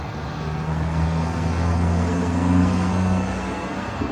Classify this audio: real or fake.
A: fake